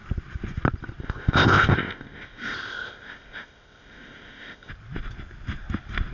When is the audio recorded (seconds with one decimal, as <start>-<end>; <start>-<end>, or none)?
0.0-1.0; 4.7-6.1